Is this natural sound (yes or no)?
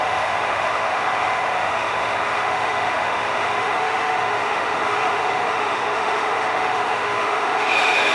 no